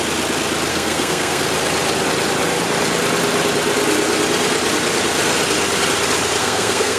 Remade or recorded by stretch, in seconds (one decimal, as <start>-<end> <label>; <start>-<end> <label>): 0.0-0.7 recorded; 0.7-1.4 remade; 1.4-6.4 recorded; 6.4-7.0 remade